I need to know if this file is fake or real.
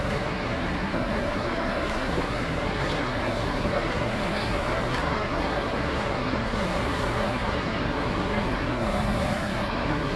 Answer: fake